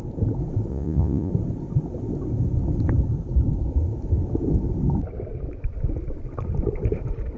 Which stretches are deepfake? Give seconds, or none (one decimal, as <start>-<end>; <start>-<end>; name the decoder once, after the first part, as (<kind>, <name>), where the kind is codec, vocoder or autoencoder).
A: 0.7-1.3 (vocoder, Vocos)